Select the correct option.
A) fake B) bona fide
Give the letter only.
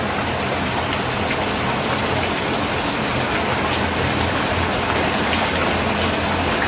B